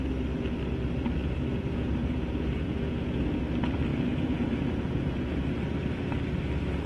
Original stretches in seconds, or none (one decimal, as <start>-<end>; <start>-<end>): 0.0-1.2; 3.4-3.9; 5.4-6.9